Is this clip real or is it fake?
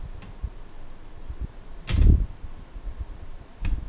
real